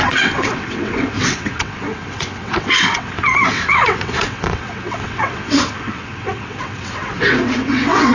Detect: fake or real fake